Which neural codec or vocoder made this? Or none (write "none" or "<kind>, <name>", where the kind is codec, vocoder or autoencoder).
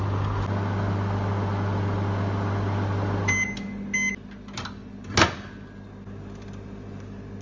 none